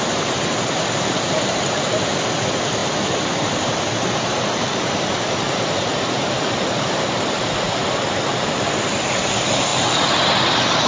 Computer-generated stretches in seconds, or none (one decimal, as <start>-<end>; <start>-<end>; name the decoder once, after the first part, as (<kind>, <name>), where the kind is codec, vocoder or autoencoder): 0.5-2.1 (vocoder, BigVGAN v2); 2.8-7.5